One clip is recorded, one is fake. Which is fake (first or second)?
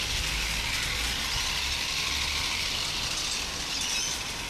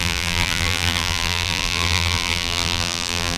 second